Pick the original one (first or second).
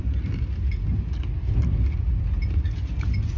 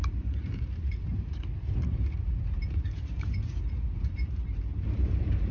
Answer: first